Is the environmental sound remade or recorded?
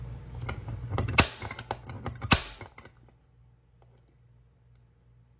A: recorded